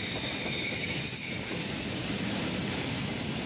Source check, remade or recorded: recorded